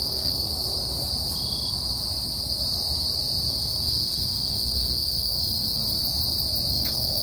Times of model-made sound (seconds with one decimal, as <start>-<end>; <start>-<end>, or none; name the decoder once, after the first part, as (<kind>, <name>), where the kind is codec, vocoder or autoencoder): 0.0-0.5 (codec, SNAC); 3.5-5.8; 6.7-7.2